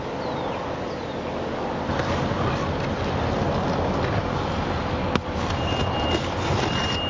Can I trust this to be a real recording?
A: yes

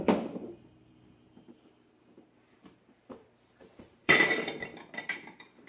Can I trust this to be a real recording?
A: no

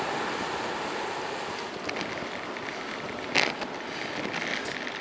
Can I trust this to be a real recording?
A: yes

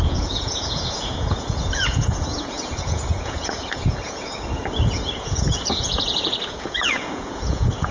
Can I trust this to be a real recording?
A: no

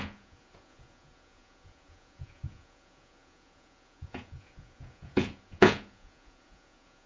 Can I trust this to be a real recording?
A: no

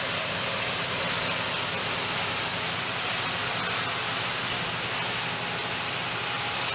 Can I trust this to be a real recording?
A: yes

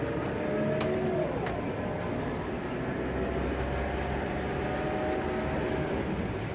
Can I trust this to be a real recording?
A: yes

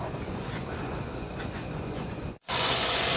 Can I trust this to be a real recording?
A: no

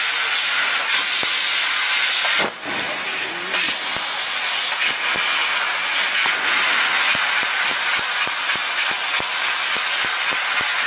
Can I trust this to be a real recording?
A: yes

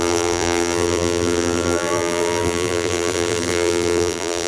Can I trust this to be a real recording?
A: no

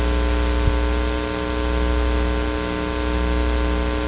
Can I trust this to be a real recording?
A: yes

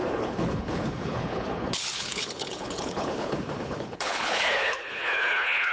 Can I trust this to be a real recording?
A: no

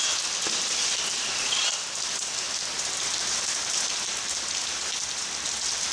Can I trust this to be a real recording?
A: yes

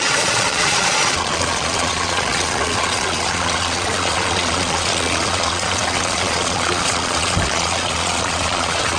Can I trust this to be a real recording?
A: no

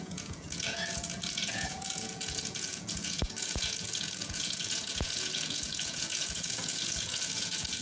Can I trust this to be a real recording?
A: no